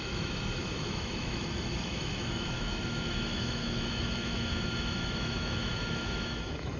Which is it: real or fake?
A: fake